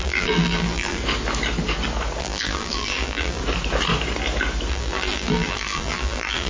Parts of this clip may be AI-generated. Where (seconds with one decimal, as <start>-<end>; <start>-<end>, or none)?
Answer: 0.0-1.0; 2.2-3.4; 4.7-6.5